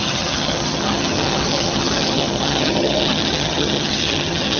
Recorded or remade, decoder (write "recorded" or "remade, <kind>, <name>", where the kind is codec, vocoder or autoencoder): remade, vocoder, HiFi-GAN